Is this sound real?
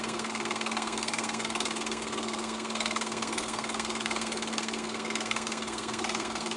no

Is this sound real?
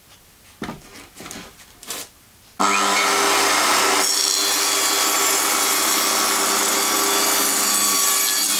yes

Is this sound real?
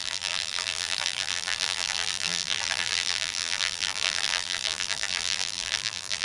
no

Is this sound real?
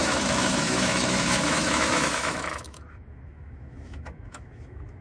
no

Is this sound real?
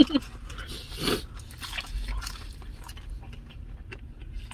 yes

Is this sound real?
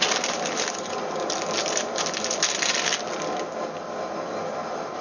yes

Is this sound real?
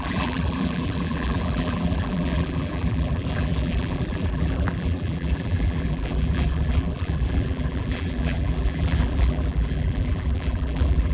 no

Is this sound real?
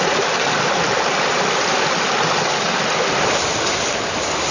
yes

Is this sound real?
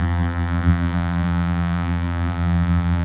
no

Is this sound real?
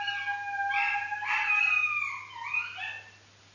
yes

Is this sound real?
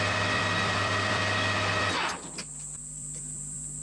no